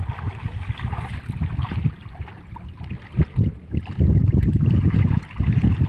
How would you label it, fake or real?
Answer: real